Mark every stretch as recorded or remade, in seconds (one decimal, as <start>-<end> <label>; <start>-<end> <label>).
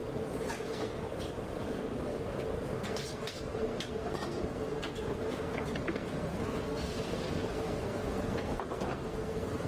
0.0-9.7 remade